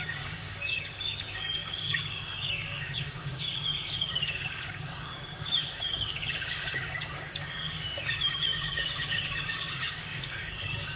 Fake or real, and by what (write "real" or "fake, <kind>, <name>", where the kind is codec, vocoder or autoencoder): fake, codec, DAC